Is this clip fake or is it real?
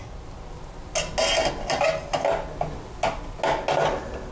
real